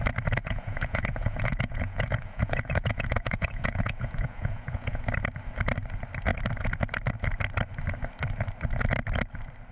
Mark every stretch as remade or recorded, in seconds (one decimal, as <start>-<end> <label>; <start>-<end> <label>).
0.0-0.4 recorded; 0.4-5.0 remade; 5.0-9.7 recorded